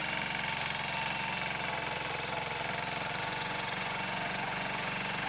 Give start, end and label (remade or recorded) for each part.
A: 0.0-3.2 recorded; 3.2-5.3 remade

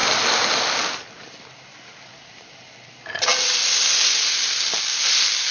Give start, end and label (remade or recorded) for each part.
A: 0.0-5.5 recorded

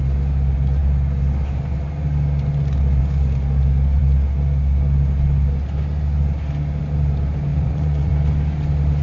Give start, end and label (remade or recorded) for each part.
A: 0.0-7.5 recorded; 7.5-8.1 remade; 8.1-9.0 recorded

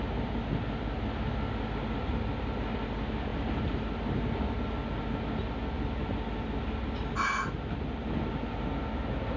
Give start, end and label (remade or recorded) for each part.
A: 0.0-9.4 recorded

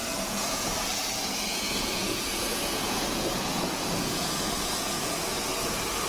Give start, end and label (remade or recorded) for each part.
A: 0.0-0.9 remade; 0.9-1.5 recorded; 1.5-5.2 remade; 5.2-6.1 recorded